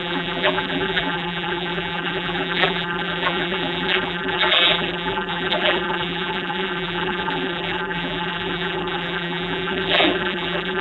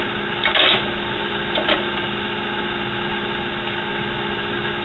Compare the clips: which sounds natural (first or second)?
second